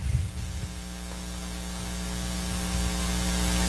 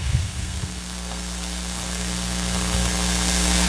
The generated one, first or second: second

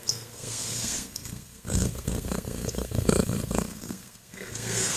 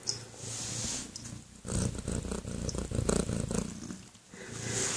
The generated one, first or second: first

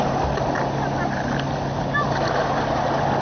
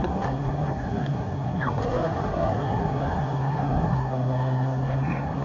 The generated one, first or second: second